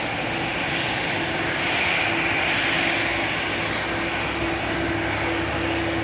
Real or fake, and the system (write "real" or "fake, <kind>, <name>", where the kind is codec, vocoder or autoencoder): real